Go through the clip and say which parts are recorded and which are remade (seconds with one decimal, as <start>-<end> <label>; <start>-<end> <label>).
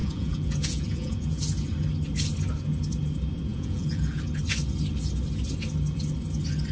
0.0-1.4 remade; 1.4-3.5 recorded; 3.5-4.2 remade; 4.2-6.7 recorded